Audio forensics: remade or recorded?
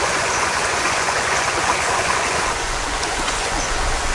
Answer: remade